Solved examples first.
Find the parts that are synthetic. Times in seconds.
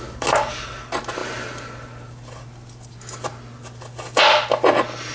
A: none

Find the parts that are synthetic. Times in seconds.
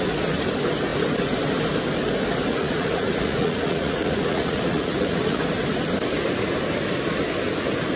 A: 2.5-5.4 (vocoder, Vocos)